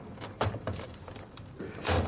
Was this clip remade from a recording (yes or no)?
yes